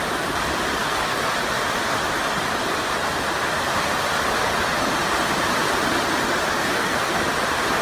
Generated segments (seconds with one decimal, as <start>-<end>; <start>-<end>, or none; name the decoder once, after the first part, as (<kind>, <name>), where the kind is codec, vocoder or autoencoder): 0.8-1.3 (codec, SNAC); 6.6-7.2